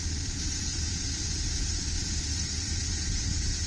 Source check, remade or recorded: recorded